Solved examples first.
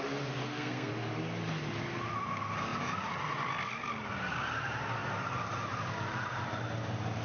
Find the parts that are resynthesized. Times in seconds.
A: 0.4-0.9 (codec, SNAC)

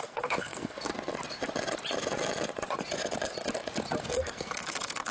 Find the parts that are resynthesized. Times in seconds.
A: 0.0-0.9 (codec, SNAC); 4.0-5.1

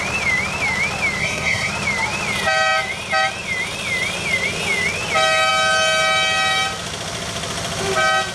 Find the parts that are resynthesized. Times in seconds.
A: 1.2-1.7 (codec, SNAC)

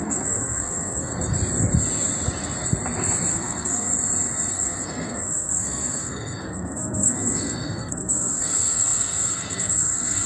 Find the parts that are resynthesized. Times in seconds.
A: 0.0-1.1 (codec, SNAC); 3.3-3.9; 4.5-10.3

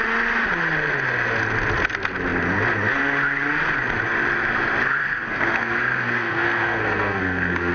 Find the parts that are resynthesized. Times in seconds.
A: 5.0-7.7 (codec, SNAC)

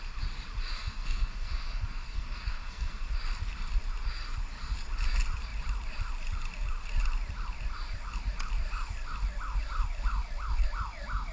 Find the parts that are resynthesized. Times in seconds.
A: 0.7-3.1 (codec, SNAC)

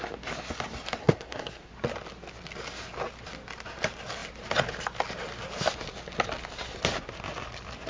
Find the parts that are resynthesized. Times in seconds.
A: 1.0-1.7 (codec, SNAC)